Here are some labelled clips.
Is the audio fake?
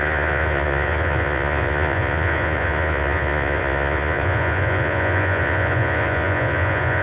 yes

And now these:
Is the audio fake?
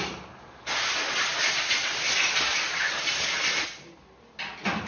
no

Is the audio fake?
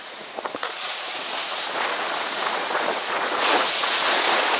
yes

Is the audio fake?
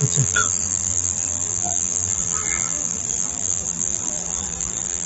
yes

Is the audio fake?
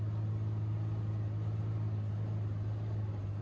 no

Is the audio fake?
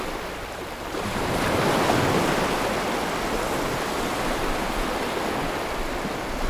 no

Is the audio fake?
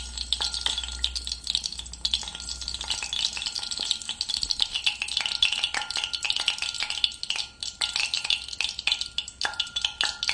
no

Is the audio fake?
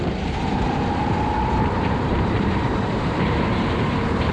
yes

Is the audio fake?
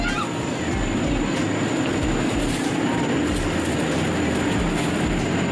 no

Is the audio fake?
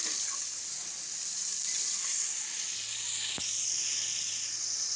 no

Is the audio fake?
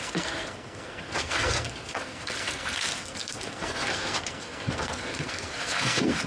yes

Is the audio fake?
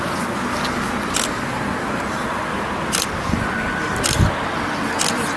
no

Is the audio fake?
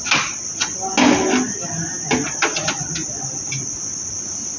no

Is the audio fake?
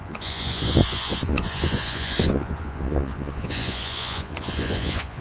yes